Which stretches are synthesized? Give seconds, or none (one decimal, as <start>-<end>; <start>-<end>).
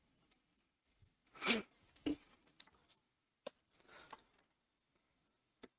none